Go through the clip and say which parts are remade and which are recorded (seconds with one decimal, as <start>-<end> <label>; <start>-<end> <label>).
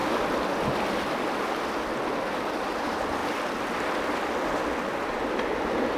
0.0-2.8 recorded; 2.8-3.2 remade; 3.2-5.3 recorded; 5.3-6.0 remade